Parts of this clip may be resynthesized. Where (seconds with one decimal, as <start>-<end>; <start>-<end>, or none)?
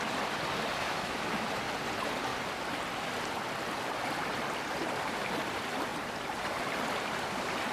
0.8-1.5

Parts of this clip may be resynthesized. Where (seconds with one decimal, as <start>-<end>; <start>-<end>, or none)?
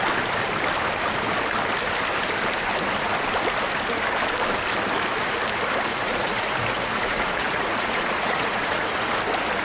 5.9-9.2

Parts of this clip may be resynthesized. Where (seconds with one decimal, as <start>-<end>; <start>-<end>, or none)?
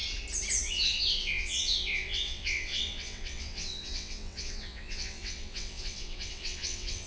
0.6-7.1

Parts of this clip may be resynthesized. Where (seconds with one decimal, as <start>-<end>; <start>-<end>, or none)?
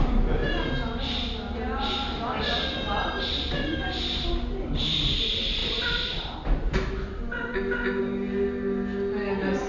none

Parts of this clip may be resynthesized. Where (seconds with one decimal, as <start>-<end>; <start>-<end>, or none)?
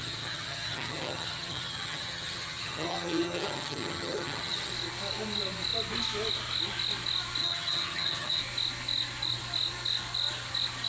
0.0-4.7; 7.4-8.4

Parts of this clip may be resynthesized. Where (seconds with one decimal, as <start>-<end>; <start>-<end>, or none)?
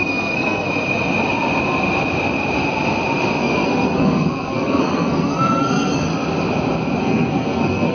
0.0-0.7; 3.4-6.1; 7.0-7.9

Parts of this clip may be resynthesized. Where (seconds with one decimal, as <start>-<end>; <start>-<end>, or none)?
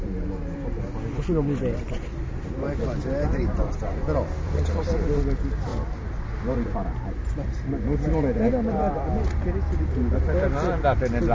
none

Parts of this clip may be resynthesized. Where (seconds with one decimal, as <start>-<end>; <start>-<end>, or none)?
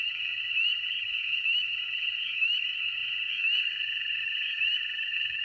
0.0-5.4